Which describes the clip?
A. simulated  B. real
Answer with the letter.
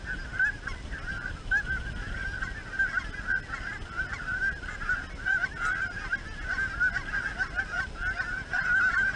B